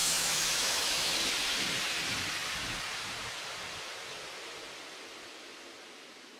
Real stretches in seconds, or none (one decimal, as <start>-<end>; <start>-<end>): 1.1-6.4